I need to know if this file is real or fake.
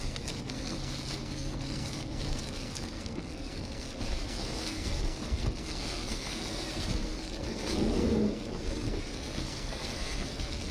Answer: fake